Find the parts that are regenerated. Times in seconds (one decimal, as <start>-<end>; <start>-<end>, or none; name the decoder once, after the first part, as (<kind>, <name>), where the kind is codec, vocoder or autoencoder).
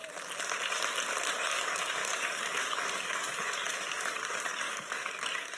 1.4-5.6 (codec, DAC)